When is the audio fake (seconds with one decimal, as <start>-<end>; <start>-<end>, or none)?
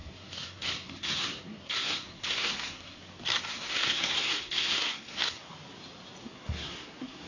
0.0-3.0; 3.5-5.5; 6.2-7.3